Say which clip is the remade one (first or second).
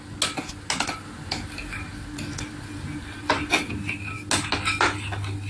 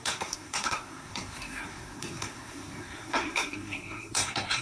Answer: second